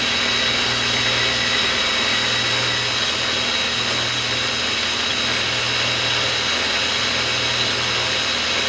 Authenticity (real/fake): real